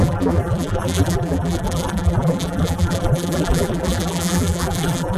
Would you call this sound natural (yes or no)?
no